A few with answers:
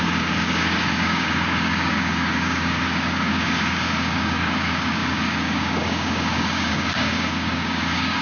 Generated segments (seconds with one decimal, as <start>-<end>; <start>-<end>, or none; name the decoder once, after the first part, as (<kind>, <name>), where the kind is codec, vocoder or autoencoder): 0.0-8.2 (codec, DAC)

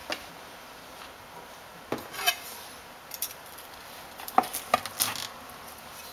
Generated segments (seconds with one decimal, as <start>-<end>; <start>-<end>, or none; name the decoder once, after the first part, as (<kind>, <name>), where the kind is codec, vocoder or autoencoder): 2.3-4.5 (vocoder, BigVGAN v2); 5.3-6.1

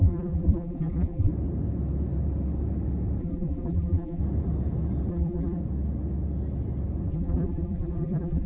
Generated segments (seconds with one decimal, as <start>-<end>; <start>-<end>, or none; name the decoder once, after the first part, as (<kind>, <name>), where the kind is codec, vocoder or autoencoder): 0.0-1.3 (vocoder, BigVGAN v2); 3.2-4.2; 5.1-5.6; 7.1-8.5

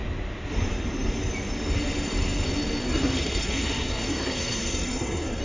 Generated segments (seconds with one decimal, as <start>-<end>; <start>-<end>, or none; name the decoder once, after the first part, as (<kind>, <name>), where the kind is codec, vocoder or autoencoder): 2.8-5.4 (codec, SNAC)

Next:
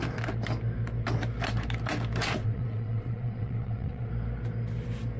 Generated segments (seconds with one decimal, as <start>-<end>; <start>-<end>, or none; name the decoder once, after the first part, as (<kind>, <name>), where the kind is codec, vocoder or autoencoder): 2.4-4.1 (vocoder, WaveNeXt)

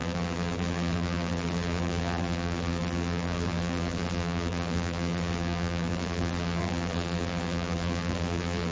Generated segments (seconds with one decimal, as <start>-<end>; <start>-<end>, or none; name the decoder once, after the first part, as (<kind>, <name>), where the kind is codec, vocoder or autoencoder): 0.0-8.7 (vocoder, BigVGAN v2)

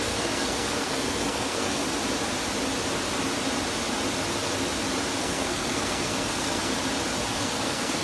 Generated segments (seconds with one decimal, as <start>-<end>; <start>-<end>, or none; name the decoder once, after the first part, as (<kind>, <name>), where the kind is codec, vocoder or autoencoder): 0.0-1.8 (codec, SNAC); 5.2-6.7; 7.3-8.0

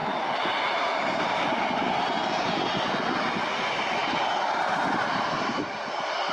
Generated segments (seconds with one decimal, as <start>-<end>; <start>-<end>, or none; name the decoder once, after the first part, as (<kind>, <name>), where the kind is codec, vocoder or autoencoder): 4.7-5.6 (vocoder, BigVGAN v2)